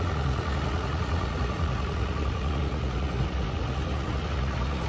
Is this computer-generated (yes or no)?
yes